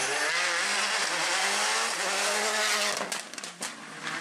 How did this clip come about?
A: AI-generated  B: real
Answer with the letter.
B